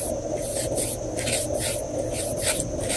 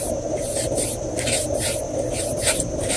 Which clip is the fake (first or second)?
second